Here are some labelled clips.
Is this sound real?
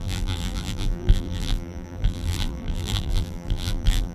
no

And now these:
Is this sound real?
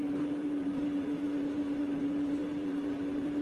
no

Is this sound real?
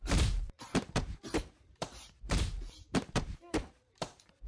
no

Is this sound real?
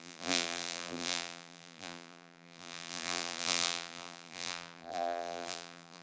no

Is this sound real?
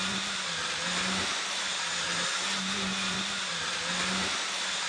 no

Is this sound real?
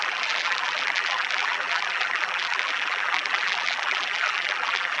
no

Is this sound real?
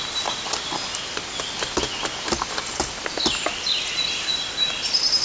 yes